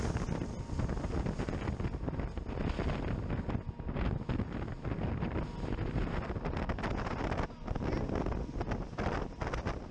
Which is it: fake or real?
real